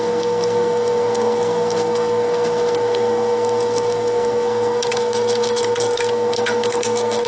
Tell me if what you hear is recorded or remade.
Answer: remade